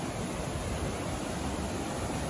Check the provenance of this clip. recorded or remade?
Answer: recorded